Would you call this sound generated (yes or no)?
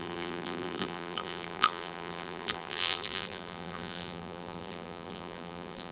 yes